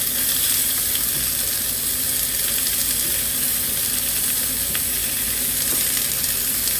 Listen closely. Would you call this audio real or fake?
real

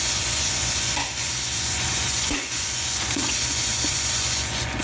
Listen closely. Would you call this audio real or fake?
fake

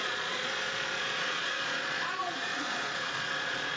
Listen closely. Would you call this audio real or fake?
fake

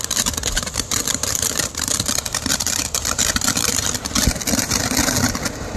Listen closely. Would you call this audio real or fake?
real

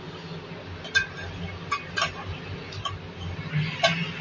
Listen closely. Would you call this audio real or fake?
real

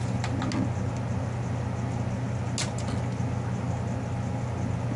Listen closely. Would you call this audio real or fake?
real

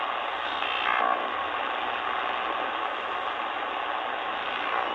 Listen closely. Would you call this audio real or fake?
real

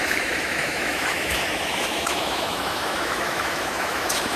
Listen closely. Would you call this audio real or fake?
fake